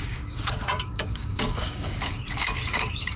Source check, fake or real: fake